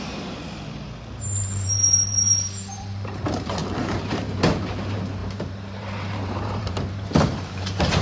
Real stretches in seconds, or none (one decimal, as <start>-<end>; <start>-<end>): none